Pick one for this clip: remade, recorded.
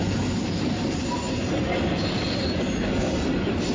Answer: recorded